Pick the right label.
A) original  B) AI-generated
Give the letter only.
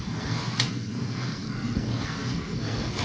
B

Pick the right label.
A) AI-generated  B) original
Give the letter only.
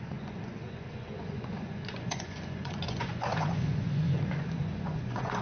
A